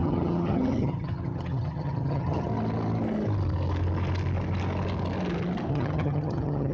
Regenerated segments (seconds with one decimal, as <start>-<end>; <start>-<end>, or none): 0.0-2.5; 5.7-6.7